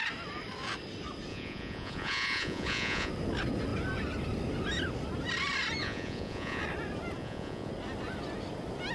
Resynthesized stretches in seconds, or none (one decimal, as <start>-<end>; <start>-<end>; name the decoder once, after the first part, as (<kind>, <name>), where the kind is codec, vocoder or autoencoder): 1.3-3.1 (vocoder, Vocos); 5.8-6.6; 7.2-7.7

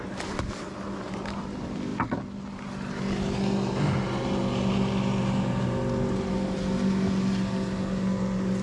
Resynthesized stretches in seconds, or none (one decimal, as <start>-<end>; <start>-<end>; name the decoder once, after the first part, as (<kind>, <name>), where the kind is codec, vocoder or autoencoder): none

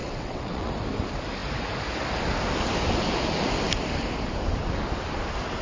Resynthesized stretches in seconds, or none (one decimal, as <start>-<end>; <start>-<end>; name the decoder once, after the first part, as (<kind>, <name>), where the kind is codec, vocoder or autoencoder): 0.0-0.7 (vocoder, WaveNeXt)

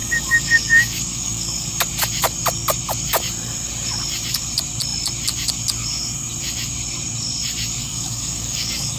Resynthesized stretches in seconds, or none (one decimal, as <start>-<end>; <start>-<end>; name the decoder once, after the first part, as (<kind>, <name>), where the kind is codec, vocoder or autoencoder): 0.0-1.7 (codec, DAC); 7.8-9.0